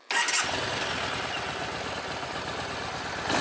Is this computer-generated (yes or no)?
no